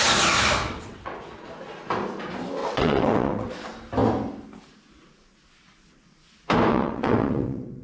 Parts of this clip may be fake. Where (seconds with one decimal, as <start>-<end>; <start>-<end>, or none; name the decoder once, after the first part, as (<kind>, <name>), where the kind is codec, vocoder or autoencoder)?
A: 0.6-1.2 (vocoder, WaveNeXt); 2.6-3.5; 6.7-7.8